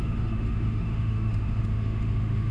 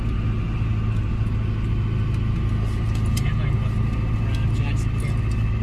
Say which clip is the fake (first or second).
first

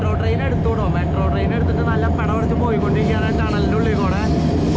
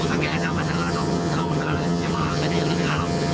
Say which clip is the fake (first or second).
second